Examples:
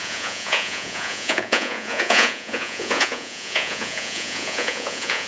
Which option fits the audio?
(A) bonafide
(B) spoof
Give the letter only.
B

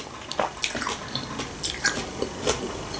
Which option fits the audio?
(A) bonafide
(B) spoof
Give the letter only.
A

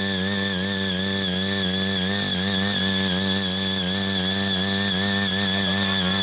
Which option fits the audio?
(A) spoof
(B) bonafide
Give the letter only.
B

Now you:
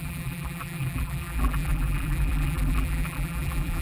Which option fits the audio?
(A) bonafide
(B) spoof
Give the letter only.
B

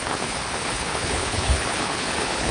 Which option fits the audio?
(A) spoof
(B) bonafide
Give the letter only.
A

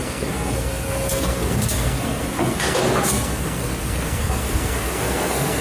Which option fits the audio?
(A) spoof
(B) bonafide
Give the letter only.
A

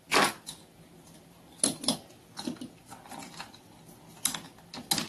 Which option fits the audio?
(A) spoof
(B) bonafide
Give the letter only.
B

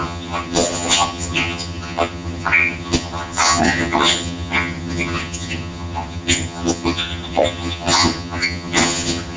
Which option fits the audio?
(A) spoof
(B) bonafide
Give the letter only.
A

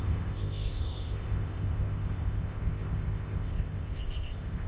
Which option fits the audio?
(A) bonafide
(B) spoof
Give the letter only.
B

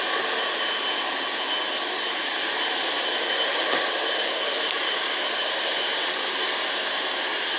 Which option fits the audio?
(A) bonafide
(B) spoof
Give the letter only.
A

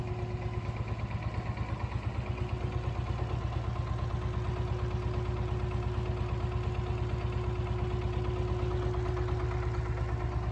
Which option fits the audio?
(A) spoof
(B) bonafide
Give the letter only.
B